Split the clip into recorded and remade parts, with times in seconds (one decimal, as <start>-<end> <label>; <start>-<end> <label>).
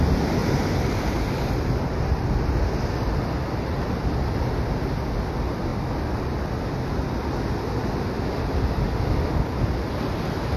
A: 0.0-0.4 recorded; 0.4-1.5 remade; 1.5-5.7 recorded; 5.7-6.5 remade; 6.5-10.6 recorded